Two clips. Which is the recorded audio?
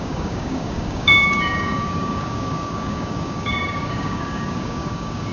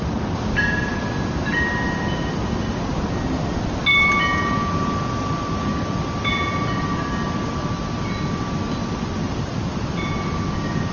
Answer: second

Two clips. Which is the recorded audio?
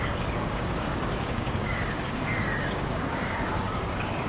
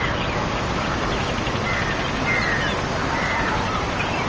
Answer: second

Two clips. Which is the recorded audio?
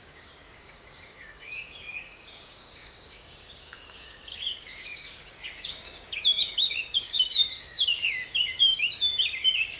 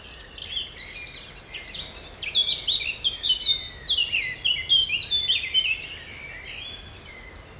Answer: second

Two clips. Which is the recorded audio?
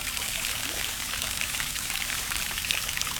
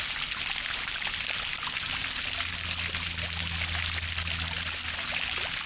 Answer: second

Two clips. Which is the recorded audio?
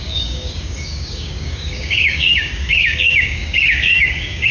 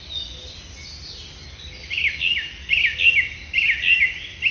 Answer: second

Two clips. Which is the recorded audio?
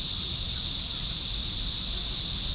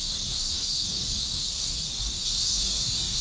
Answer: first